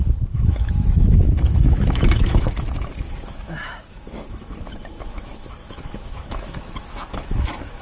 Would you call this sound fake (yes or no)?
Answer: yes